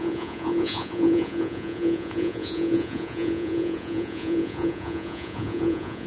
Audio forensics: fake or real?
fake